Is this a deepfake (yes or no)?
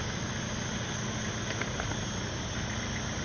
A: no